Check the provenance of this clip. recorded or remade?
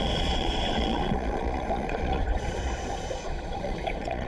remade